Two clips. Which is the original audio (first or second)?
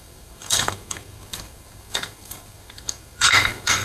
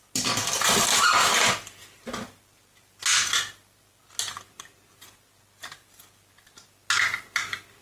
second